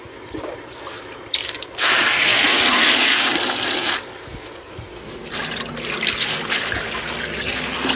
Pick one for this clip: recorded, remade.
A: recorded